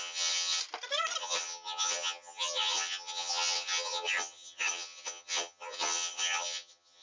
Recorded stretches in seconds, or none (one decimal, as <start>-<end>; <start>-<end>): 0.6-1.2